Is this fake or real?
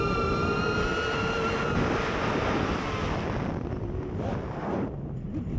real